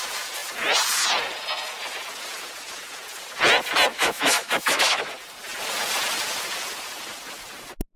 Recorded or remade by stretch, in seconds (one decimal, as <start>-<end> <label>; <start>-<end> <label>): 0.0-3.9 recorded; 3.9-5.0 remade; 5.0-8.0 recorded